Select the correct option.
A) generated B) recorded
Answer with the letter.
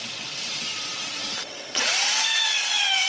A